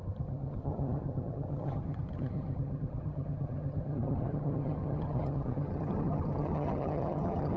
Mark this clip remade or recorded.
remade